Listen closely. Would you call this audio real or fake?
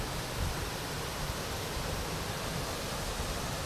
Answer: real